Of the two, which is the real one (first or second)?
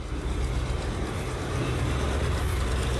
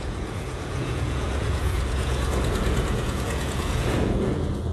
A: first